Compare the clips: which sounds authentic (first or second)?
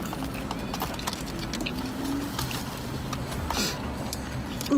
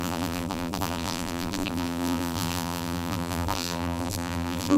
first